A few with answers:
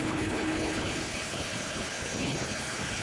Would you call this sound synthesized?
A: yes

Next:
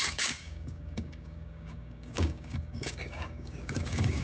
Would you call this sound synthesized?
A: yes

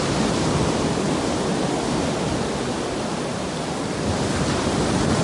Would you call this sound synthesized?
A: no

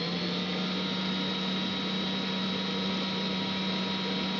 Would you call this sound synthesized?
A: no